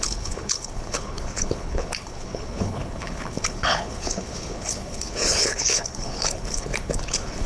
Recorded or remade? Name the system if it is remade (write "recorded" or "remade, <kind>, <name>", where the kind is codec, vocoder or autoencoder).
remade, codec, HILCodec